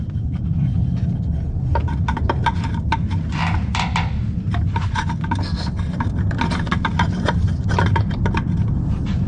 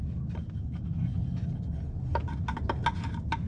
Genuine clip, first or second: second